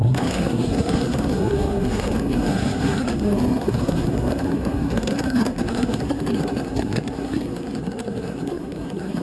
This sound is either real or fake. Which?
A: fake